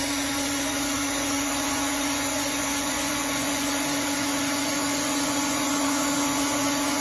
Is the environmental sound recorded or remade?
remade